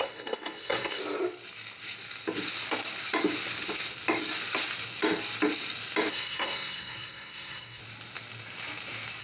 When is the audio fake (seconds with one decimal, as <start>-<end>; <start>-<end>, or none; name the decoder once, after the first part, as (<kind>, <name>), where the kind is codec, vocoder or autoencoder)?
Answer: 0.0-1.0 (codec, SNAC); 6.1-7.8